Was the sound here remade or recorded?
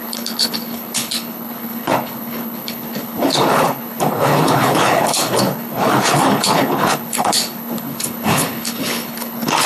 remade